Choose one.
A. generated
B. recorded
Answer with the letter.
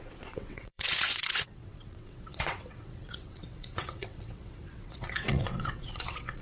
A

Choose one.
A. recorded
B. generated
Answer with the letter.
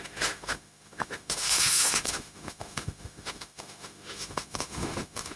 B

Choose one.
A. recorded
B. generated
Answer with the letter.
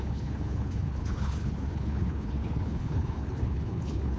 B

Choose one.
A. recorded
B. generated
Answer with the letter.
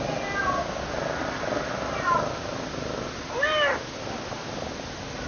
A